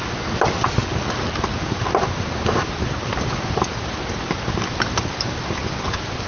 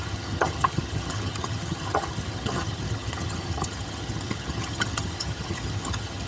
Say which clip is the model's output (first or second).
second